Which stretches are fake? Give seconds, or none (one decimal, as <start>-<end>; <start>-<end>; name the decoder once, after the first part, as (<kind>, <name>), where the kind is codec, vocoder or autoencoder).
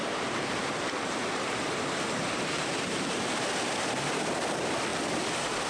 0.0-3.1 (vocoder, BigVGAN v2)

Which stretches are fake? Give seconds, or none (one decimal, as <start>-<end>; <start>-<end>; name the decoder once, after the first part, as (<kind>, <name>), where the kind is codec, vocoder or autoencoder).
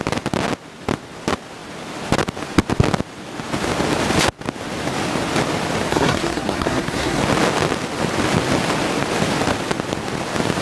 5.9-7.2 (codec, SNAC)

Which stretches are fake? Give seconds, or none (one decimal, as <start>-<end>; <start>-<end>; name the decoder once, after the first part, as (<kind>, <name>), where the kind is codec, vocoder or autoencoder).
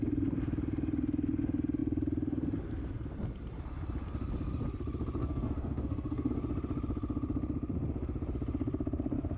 5.2-6.3 (codec, SNAC)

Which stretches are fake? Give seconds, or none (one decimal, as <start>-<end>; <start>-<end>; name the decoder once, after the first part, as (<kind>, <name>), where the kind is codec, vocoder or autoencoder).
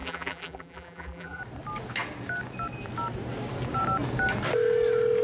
0.0-1.4 (vocoder, BigVGAN v2)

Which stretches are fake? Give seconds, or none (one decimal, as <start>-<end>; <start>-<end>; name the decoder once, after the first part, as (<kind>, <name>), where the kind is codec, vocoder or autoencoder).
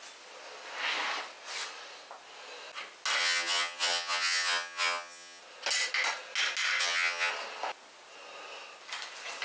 3.2-5.4 (vocoder, HiFi-GAN); 6.8-7.3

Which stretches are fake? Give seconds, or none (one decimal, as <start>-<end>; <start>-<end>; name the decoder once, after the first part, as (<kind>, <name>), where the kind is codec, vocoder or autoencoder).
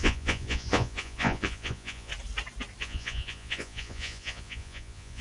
0.0-2.1 (vocoder, Vocos); 2.8-5.2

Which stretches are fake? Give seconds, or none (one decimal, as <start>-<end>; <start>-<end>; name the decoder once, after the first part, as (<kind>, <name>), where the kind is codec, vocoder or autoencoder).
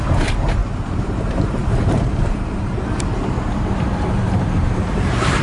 0.0-5.4 (vocoder, BigVGAN v2)